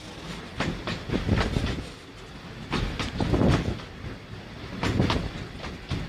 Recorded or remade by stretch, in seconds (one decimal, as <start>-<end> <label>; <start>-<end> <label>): 0.0-6.1 recorded